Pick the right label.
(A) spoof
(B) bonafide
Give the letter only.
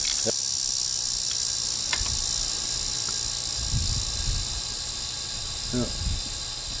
B